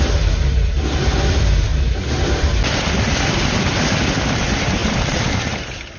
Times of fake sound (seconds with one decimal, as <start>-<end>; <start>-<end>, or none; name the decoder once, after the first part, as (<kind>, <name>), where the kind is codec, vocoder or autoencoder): 0.0-1.7 (vocoder, BigVGAN v2); 3.5-6.0